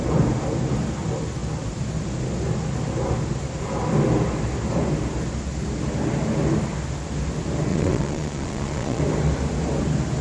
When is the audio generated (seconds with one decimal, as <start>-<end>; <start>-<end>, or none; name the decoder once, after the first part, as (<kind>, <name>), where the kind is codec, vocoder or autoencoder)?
7.7-9.0 (vocoder, Vocos)